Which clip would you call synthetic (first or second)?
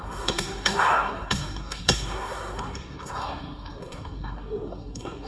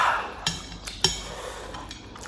first